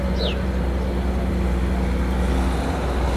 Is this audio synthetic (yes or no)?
no